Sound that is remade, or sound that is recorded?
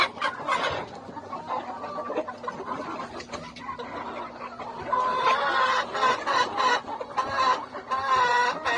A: recorded